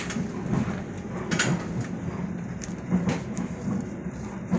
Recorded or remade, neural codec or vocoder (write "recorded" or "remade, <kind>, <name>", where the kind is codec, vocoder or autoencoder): recorded